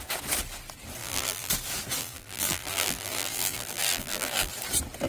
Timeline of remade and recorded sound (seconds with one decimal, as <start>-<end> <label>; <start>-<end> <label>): 0.0-1.0 recorded; 1.0-1.5 remade; 1.5-2.0 recorded; 2.0-4.5 remade; 4.5-5.1 recorded